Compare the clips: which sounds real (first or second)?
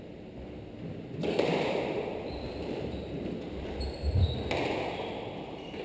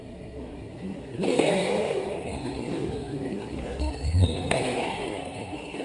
first